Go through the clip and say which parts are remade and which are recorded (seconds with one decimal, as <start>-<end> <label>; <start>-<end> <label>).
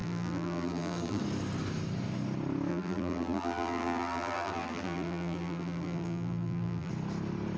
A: 0.0-1.2 remade; 1.2-2.7 recorded; 2.7-6.9 remade; 6.9-7.6 recorded